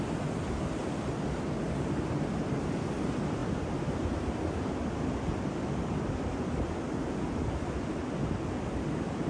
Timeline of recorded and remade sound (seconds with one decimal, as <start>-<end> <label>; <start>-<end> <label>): 0.0-9.3 recorded